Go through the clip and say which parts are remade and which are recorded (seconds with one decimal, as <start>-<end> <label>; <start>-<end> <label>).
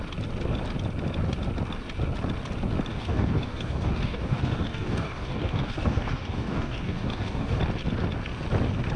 0.0-2.9 recorded; 2.9-7.6 remade; 7.6-9.0 recorded